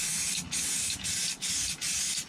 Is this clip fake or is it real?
real